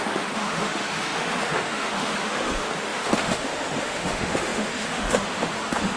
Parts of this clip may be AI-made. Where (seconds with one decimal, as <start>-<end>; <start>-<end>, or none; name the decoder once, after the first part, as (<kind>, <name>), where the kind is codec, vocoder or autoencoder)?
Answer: 0.0-6.0 (autoencoder, DAC-VAE)